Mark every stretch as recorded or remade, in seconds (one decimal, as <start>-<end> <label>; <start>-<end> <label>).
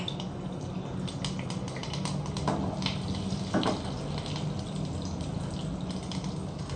0.0-6.8 recorded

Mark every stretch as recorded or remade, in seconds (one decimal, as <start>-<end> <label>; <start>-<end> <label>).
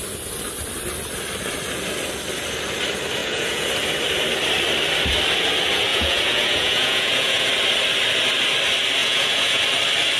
0.0-3.2 recorded; 3.2-3.7 remade; 3.7-5.9 recorded; 5.9-7.5 remade; 7.5-9.0 recorded; 9.0-9.6 remade; 9.6-10.2 recorded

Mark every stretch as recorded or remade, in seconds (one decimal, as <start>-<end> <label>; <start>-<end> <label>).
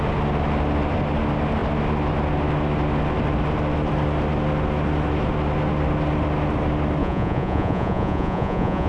0.0-7.0 recorded; 7.0-8.9 remade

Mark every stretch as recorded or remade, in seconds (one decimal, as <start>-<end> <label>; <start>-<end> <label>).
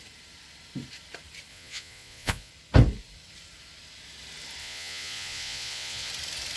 0.0-1.5 recorded; 1.5-2.5 remade; 2.5-4.6 recorded; 4.6-6.1 remade; 6.1-6.6 recorded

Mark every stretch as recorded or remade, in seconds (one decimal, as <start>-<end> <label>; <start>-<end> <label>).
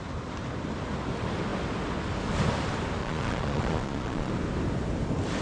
0.0-3.0 recorded; 3.0-4.3 remade; 4.3-5.4 recorded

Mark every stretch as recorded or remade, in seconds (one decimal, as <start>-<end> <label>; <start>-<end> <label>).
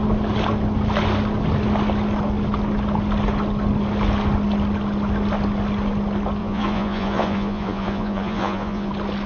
0.0-6.4 recorded; 6.4-8.9 remade; 8.9-9.3 recorded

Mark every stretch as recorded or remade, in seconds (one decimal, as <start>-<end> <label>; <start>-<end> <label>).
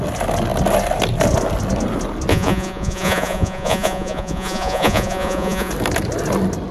0.0-2.3 recorded; 2.3-5.7 remade; 5.7-6.7 recorded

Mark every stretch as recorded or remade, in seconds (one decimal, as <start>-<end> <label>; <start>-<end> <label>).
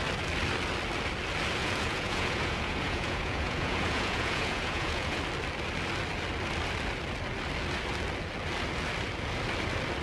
0.0-1.6 recorded; 1.6-5.2 remade; 5.2-10.0 recorded